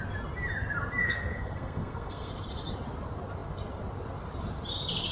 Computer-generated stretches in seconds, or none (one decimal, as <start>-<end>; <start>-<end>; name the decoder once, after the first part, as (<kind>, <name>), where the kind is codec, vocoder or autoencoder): 1.0-2.3 (codec, SNAC)